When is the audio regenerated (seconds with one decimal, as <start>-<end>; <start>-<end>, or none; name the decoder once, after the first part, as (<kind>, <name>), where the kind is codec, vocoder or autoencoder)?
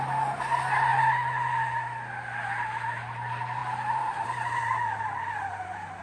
3.6-6.0 (vocoder, BigVGAN v2)